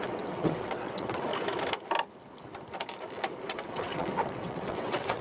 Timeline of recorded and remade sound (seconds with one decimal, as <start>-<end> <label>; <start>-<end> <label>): 0.0-1.3 remade; 1.3-3.4 recorded; 3.4-5.2 remade